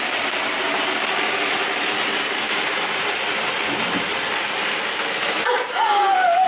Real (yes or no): yes